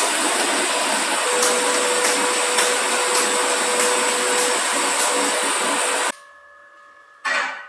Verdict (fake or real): real